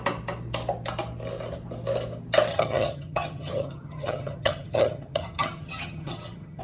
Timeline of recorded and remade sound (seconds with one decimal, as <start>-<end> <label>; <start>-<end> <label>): 0.0-2.5 recorded; 2.5-6.6 remade